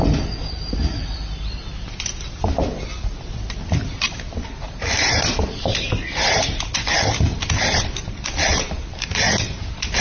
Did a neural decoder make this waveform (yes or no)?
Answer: yes